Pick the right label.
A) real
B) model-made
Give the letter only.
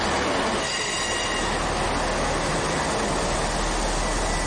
A